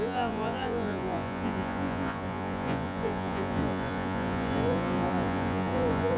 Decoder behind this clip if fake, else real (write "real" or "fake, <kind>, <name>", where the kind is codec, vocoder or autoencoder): fake, vocoder, Vocos